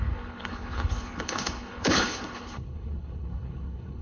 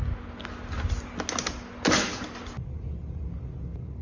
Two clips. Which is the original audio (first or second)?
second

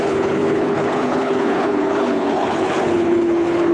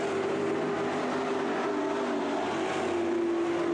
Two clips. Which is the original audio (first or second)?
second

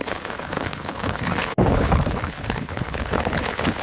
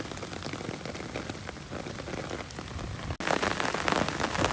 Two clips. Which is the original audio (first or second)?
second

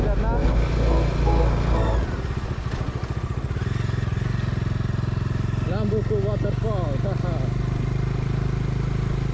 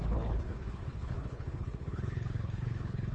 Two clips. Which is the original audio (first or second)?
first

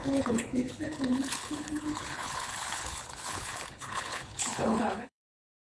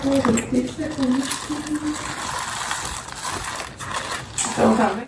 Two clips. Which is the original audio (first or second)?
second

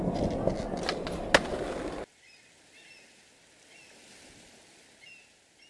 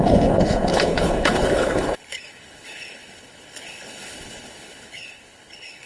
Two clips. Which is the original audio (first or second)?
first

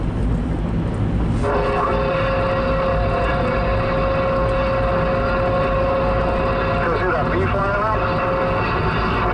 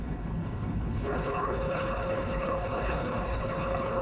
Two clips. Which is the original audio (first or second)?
first